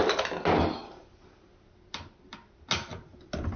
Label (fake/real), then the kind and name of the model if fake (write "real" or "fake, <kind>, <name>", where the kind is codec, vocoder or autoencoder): real